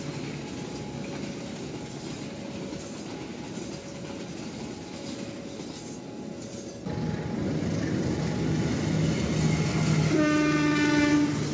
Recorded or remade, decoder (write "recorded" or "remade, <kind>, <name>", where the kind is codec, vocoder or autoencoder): recorded